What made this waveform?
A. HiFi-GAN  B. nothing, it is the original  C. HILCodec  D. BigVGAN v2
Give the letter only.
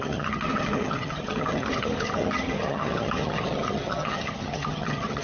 A